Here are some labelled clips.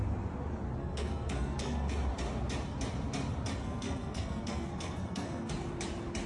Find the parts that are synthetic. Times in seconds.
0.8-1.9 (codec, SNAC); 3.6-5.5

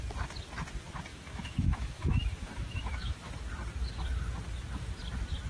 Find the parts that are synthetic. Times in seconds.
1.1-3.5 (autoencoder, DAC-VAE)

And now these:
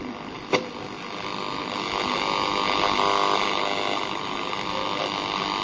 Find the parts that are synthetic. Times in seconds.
none